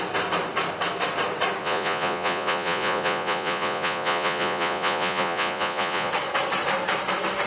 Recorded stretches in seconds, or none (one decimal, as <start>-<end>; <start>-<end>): 0.0-1.6; 6.1-7.5